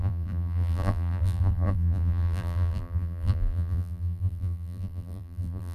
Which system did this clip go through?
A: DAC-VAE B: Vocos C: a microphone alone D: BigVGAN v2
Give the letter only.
D